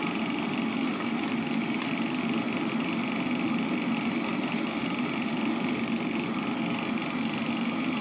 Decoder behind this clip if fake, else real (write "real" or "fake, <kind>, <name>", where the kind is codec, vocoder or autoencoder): real